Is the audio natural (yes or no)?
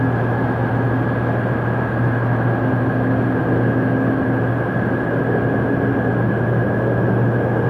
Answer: yes